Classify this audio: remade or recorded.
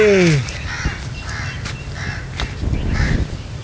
recorded